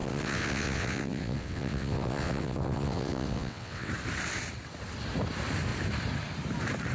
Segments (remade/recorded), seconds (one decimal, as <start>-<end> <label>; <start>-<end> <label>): 0.0-3.9 remade; 3.9-6.9 recorded